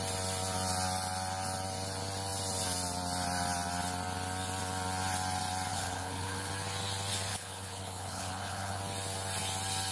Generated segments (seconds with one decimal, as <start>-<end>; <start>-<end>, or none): 5.7-6.5; 7.3-8.8